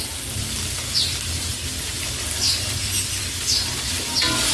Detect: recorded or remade recorded